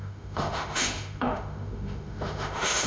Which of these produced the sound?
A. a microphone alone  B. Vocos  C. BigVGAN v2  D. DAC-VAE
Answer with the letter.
D